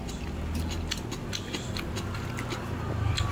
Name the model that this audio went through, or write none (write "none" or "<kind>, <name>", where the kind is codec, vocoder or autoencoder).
none